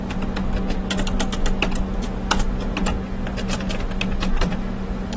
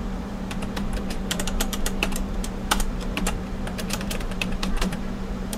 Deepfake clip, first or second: second